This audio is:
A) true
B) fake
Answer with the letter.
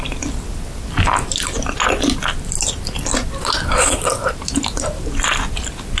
A